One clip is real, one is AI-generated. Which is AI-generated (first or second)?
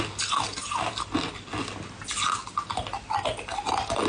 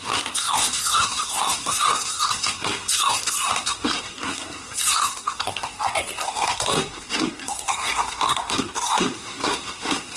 second